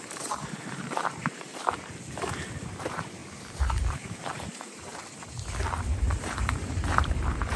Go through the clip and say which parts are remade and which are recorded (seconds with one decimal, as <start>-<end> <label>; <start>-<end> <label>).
0.0-1.5 remade; 1.5-2.5 recorded; 2.5-3.2 remade; 3.2-3.9 recorded; 3.9-4.9 remade; 4.9-6.2 recorded; 6.2-7.6 remade